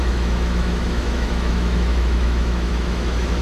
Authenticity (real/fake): fake